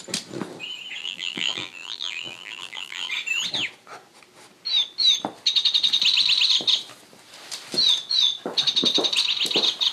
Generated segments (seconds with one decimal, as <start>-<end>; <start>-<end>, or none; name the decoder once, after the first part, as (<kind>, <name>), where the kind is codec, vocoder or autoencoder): 1.0-3.1 (vocoder, BigVGAN v2)